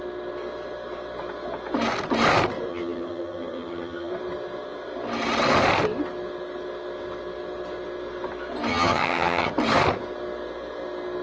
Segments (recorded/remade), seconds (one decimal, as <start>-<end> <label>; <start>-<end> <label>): 0.0-2.7 recorded; 2.7-4.1 remade; 4.1-8.7 recorded; 8.7-9.5 remade; 9.5-11.2 recorded